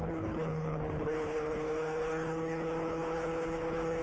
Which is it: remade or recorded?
remade